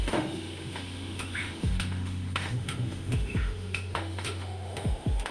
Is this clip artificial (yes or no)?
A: yes